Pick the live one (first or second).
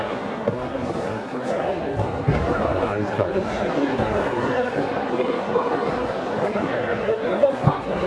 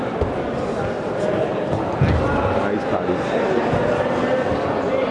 second